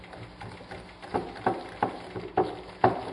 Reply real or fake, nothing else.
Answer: real